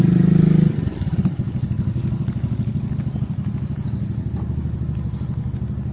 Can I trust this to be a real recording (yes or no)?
yes